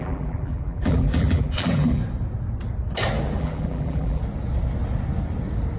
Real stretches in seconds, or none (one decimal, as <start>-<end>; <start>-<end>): 2.0-3.4; 4.2-5.8